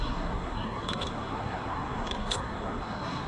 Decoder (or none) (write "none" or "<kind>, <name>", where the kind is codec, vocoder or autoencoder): codec, SNAC